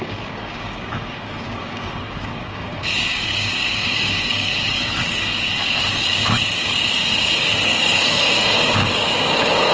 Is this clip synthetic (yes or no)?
yes